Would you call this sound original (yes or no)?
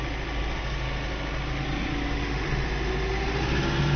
yes